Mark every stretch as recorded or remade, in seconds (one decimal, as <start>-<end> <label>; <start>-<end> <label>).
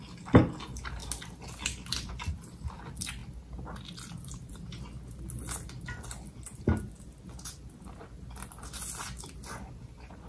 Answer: 0.0-10.3 recorded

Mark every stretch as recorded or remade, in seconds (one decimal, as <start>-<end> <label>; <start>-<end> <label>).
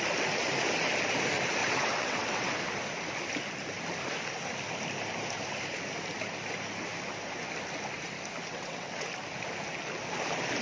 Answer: 0.0-1.6 recorded; 1.6-2.5 remade; 2.5-8.5 recorded; 8.5-9.1 remade; 9.1-10.6 recorded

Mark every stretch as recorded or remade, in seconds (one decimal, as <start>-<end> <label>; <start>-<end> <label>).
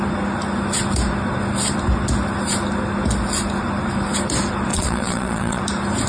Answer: 0.0-4.7 recorded; 4.7-5.6 remade; 5.6-6.1 recorded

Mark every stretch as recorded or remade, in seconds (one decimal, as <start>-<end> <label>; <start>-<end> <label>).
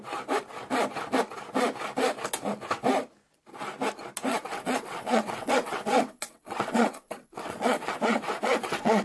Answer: 0.0-4.3 recorded; 4.3-9.0 remade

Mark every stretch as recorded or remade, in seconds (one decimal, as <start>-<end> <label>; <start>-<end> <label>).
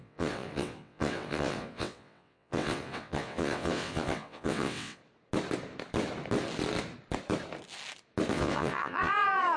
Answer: 0.0-5.0 remade; 5.0-8.3 recorded; 8.3-9.6 remade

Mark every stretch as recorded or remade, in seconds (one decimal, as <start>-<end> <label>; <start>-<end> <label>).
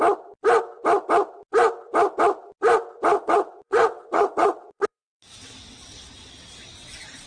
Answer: 0.0-3.1 recorded; 3.1-7.3 remade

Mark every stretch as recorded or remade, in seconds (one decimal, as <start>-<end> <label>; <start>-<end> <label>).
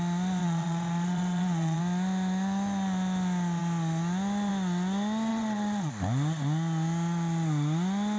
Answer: 0.0-0.4 recorded; 0.4-1.8 remade; 1.8-5.3 recorded; 5.3-5.9 remade; 5.9-8.2 recorded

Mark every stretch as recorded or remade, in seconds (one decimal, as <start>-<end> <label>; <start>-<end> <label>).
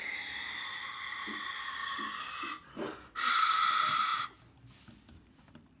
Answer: 0.0-5.8 recorded